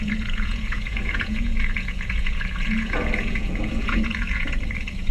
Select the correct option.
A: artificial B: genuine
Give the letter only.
A